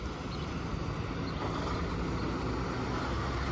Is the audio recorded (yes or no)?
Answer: yes